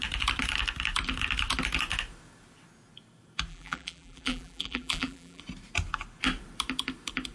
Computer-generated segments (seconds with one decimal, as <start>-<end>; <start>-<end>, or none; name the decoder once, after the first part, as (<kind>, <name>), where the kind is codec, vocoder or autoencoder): 3.5-5.4 (vocoder, BigVGAN v2)